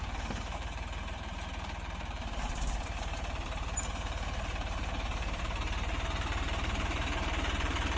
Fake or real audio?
fake